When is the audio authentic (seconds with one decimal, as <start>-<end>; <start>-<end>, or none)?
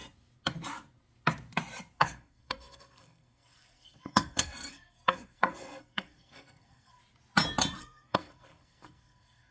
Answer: 0.0-2.0; 7.0-7.8